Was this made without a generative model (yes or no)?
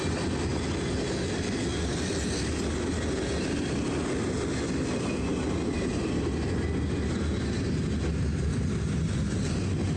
yes